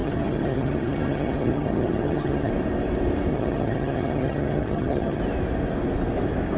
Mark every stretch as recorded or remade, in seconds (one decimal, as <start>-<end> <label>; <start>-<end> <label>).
0.0-2.5 remade; 2.5-3.3 recorded; 3.3-5.2 remade; 5.2-6.6 recorded